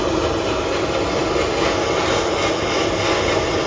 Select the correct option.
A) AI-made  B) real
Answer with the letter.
B